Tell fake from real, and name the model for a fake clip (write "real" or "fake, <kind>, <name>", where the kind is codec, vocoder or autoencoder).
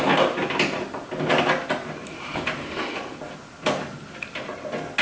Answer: real